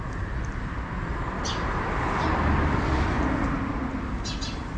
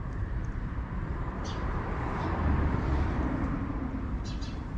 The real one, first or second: first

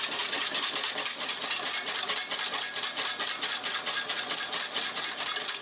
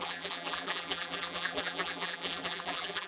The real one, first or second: first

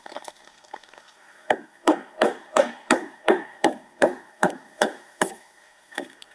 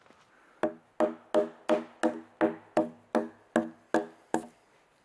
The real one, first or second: second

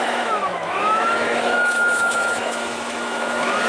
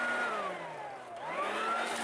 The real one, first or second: second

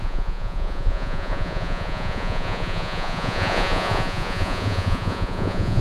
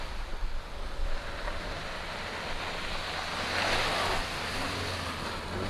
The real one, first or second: second